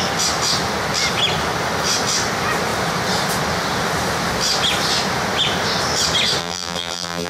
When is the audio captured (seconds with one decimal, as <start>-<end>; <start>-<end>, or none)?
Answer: 0.0-6.4